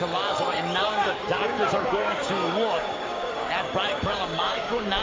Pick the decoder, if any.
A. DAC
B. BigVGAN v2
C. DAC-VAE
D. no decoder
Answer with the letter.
A